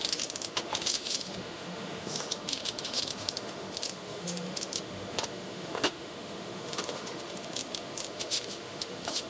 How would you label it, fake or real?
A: fake